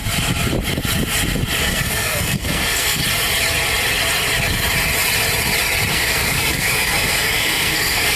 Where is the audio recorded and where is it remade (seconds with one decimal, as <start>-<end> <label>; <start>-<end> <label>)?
0.0-1.6 recorded; 1.6-3.0 remade; 3.0-5.9 recorded; 5.9-8.2 remade

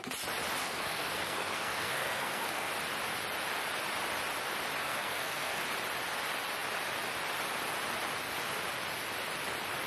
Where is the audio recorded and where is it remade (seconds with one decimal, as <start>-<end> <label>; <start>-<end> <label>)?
0.0-0.6 recorded; 0.6-2.7 remade; 2.7-4.8 recorded; 4.8-5.6 remade; 5.6-9.9 recorded

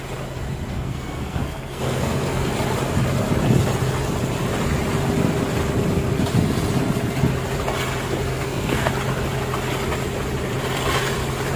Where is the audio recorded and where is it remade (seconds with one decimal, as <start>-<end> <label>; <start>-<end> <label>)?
0.0-0.7 recorded; 0.7-2.5 remade; 2.5-8.3 recorded; 8.3-8.9 remade; 8.9-11.6 recorded